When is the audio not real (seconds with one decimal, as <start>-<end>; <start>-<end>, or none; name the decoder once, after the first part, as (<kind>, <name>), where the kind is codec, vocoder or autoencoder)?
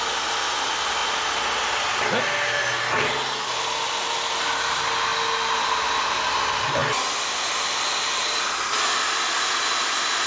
none